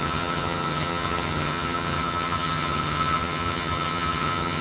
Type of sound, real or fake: fake